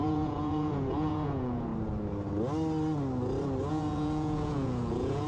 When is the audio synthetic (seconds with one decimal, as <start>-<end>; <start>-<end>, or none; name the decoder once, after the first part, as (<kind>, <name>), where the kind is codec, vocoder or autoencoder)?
0.0-1.7 (vocoder, Vocos); 3.7-5.3